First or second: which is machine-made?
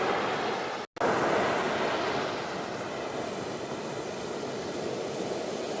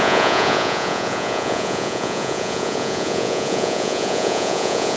second